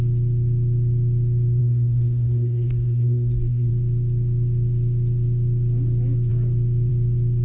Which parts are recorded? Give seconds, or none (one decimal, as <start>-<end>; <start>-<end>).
0.0-1.6; 3.7-7.4